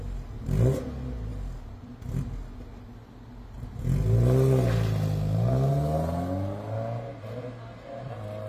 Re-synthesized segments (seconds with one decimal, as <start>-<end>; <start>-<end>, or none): none